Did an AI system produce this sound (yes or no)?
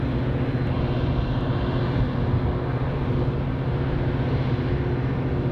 no